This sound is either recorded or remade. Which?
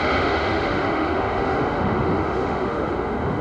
remade